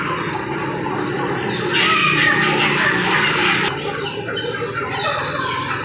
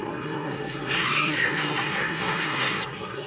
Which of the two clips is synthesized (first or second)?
second